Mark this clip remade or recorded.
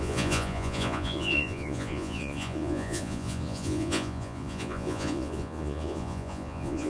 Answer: remade